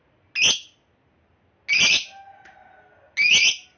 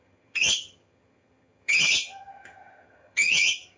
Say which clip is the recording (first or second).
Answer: first